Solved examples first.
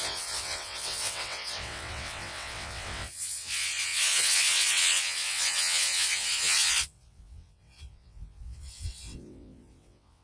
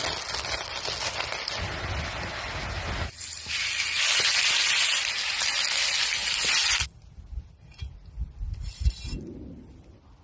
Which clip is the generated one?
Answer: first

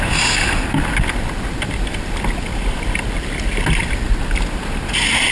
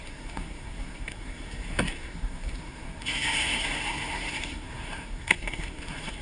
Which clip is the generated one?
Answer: second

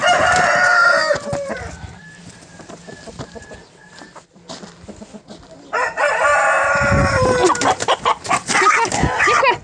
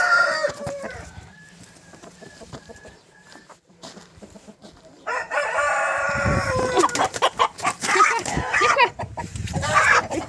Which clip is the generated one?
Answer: second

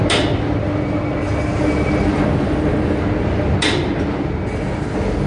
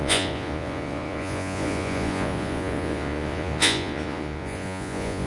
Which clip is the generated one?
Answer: second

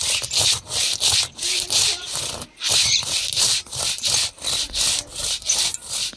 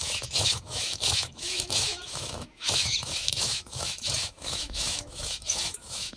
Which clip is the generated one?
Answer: second